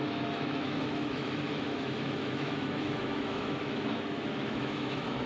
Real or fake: fake